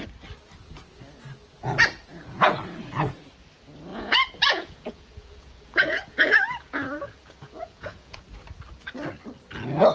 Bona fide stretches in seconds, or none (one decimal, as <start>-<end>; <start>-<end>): 0.0-2.1; 2.6-3.9; 8.2-9.9